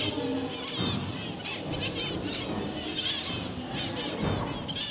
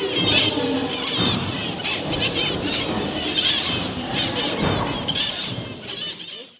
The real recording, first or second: first